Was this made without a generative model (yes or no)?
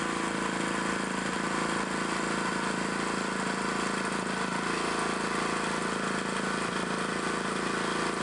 yes